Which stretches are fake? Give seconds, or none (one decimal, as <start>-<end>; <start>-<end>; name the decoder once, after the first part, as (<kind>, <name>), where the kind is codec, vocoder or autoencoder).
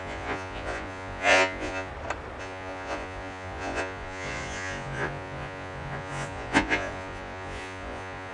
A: 0.0-1.9 (vocoder, Vocos); 2.4-8.3